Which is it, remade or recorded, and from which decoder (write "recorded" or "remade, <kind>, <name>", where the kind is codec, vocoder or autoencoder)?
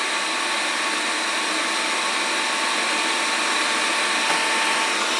recorded